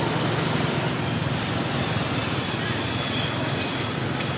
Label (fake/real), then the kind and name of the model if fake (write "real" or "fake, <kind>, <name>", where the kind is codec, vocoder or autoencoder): real